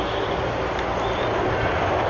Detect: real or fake real